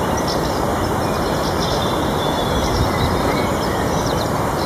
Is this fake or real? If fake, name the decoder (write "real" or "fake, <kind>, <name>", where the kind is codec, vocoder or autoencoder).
fake, vocoder, BigVGAN v2